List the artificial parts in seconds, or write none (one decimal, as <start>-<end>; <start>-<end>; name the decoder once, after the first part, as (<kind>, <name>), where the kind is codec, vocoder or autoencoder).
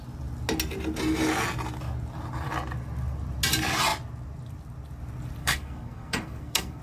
5.4-6.8 (codec, SNAC)